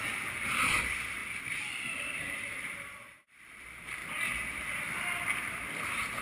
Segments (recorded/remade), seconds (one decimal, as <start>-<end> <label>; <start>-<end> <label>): 0.0-4.0 remade; 4.0-5.4 recorded; 5.4-6.2 remade